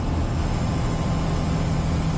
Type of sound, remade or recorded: recorded